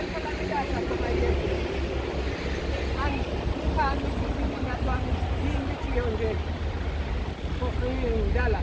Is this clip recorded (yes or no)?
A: yes